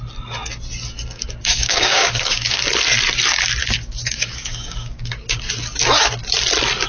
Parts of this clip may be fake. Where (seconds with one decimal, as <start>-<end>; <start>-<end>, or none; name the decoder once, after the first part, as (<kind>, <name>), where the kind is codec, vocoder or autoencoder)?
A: 1.4-2.6 (codec, DAC); 3.6-5.4